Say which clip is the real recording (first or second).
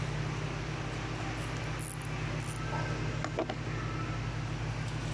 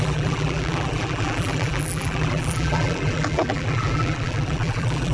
first